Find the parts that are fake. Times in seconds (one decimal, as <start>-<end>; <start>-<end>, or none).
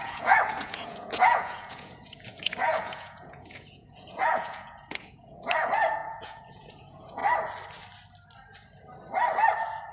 0.0-7.2